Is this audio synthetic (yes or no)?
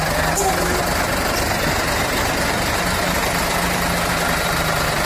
no